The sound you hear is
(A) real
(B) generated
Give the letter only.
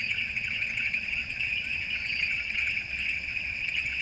B